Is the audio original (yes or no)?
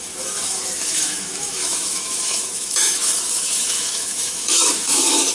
no